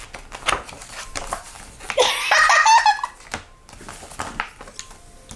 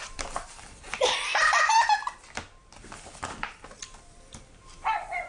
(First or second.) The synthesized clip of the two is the second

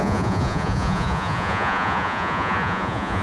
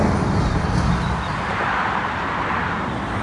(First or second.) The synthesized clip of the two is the first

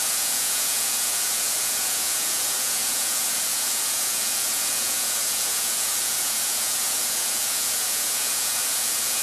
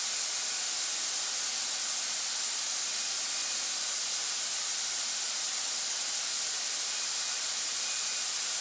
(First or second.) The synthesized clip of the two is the first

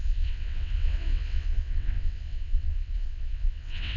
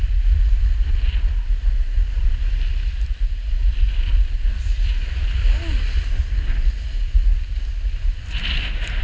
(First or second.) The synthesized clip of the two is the first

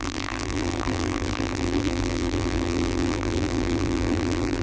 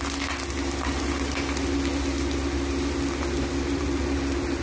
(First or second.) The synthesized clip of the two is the first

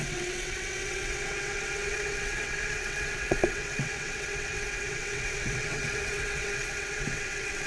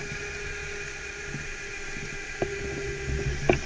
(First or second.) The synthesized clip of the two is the first